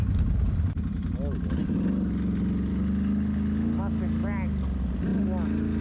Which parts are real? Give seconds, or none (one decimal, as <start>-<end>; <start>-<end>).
0.0-5.8